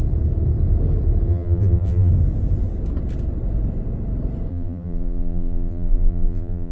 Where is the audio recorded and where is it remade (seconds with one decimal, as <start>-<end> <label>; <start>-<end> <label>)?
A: 0.0-1.3 recorded; 1.3-2.1 remade; 2.1-4.5 recorded; 4.5-6.7 remade